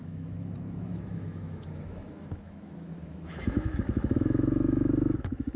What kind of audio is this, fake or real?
fake